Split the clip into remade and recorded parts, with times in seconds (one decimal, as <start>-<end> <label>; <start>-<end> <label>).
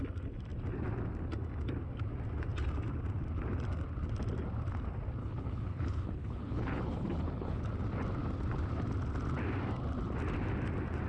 0.0-5.2 recorded; 5.2-7.6 remade; 7.6-11.1 recorded